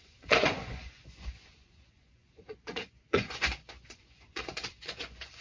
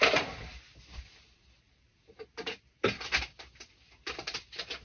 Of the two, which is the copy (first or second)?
first